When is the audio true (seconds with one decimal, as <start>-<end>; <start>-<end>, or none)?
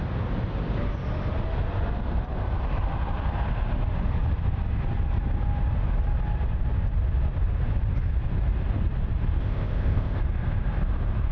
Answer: 0.0-9.4; 10.2-11.3